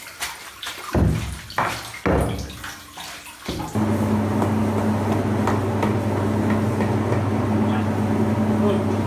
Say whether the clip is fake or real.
real